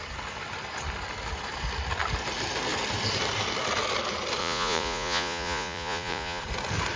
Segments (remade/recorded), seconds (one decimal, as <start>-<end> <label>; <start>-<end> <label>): 0.0-4.4 recorded; 4.4-6.4 remade; 6.4-7.0 recorded